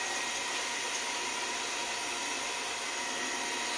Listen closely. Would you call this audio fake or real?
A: real